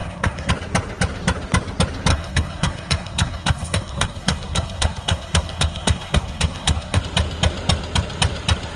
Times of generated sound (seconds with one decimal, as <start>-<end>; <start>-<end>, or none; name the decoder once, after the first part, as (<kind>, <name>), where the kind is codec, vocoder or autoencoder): 0.0-0.5 (codec, SNAC); 2.1-7.0